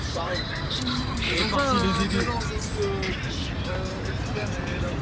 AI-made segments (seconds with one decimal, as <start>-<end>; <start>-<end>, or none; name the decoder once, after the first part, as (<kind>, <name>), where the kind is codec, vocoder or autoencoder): 0.0-1.4 (vocoder, BigVGAN v2); 3.9-5.0